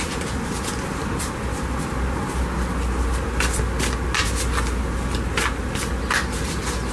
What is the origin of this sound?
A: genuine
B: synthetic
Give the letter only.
A